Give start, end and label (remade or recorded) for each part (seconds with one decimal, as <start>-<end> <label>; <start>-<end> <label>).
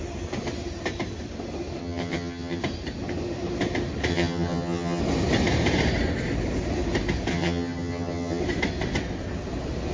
0.0-1.8 recorded; 1.8-2.6 remade; 2.6-4.1 recorded; 4.1-5.0 remade; 5.0-7.3 recorded; 7.3-8.4 remade; 8.4-9.9 recorded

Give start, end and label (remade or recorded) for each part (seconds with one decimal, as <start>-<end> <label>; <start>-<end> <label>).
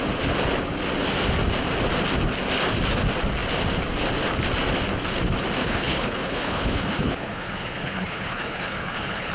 0.0-5.6 recorded; 5.6-9.3 remade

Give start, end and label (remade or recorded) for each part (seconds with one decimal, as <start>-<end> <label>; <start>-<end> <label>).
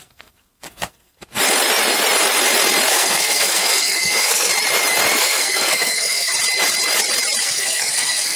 0.0-1.4 remade; 1.4-2.9 recorded; 2.9-4.5 remade; 4.5-5.2 recorded; 5.2-6.3 remade; 6.3-7.4 recorded; 7.4-8.4 remade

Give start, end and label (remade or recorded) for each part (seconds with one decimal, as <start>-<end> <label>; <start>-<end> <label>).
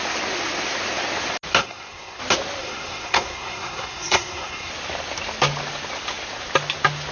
0.0-1.6 recorded; 1.6-2.2 remade; 2.2-2.6 recorded; 2.6-4.7 remade; 4.7-7.1 recorded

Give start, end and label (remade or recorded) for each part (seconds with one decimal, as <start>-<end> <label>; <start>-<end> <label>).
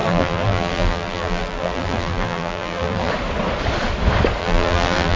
0.0-3.1 remade; 3.1-4.4 recorded; 4.4-5.2 remade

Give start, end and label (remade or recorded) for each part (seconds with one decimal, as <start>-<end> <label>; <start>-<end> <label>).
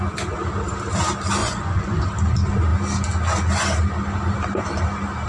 0.0-1.4 recorded; 1.4-2.0 remade; 2.0-5.3 recorded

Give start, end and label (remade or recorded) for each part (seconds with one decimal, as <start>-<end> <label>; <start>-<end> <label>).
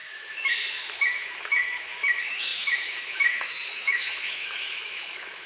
0.0-5.5 remade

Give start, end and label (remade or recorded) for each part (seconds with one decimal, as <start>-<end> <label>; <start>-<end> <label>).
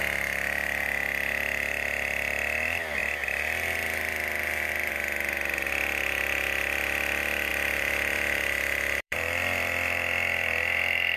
0.0-7.5 recorded; 7.5-11.2 remade